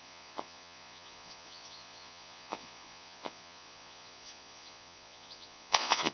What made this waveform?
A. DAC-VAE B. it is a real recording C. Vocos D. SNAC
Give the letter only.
C